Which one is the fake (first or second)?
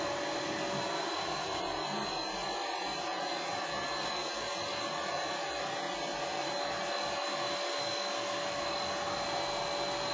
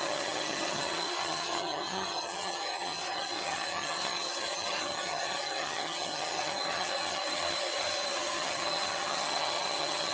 second